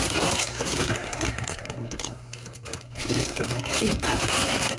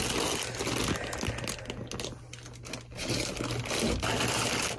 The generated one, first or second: first